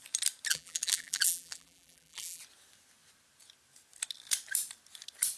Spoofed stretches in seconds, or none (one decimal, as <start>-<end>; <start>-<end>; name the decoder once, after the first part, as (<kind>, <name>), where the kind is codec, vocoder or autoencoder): 0.5-2.4 (vocoder, BigVGAN v2)